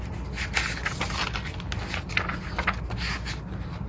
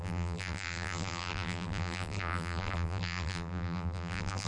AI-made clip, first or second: second